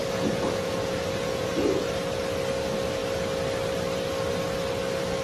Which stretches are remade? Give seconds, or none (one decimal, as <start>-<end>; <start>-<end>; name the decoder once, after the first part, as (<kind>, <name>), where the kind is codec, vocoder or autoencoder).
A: 0.0-1.9 (vocoder, Vocos)